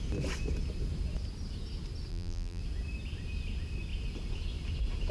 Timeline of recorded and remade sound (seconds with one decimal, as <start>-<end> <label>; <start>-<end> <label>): 0.0-2.1 recorded; 2.1-2.6 remade; 2.6-5.1 recorded